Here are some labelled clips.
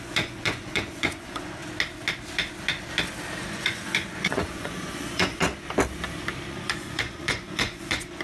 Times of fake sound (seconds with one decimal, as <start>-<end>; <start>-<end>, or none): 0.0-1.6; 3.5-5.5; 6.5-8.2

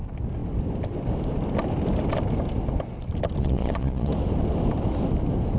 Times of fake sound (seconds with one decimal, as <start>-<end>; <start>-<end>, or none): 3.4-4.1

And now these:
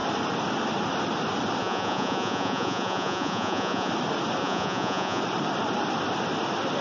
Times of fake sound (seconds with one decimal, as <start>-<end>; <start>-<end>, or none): 1.6-3.9; 4.4-5.2

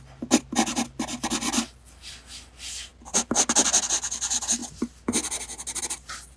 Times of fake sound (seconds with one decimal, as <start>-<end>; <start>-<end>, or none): none